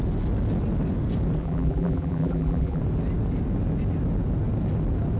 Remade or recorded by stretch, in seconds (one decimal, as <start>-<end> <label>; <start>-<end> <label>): 0.0-1.4 recorded; 1.4-2.8 remade; 2.8-5.2 recorded